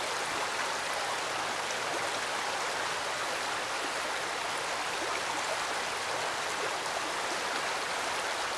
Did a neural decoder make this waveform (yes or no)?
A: no